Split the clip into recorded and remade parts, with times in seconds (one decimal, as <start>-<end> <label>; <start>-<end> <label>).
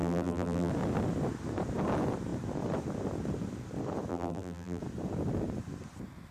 0.0-0.7 remade; 0.7-4.1 recorded; 4.1-4.8 remade; 4.8-6.3 recorded